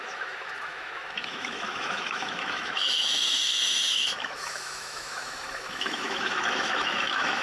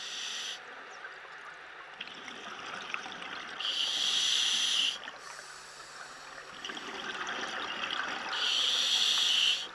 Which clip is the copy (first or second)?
first